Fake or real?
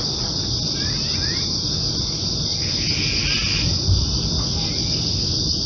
real